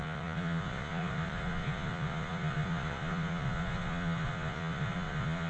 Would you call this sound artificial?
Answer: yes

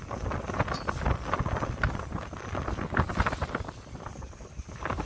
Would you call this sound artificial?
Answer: no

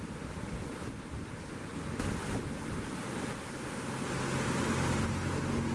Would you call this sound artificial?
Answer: no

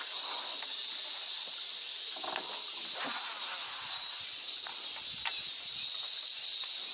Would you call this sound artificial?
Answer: no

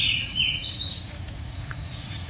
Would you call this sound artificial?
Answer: yes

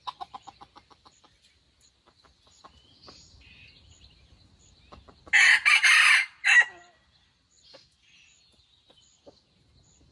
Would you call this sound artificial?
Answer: no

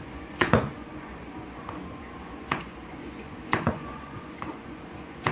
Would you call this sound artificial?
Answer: yes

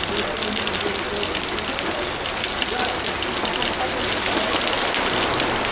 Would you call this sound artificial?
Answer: no